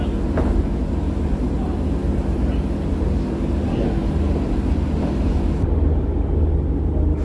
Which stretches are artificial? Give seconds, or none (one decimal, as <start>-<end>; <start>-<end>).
none